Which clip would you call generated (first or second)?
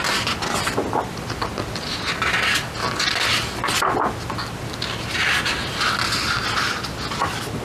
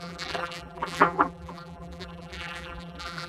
second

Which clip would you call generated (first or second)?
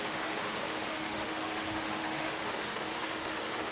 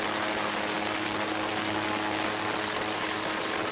first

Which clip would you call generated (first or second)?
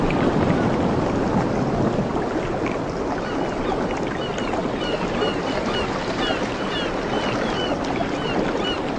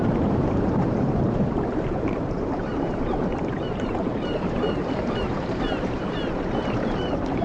second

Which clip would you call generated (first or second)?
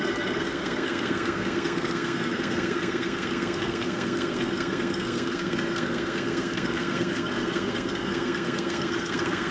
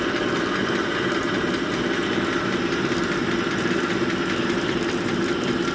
first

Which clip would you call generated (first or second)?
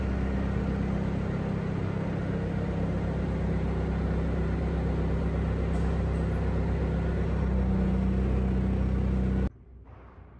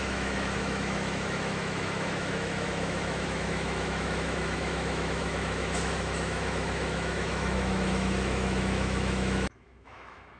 second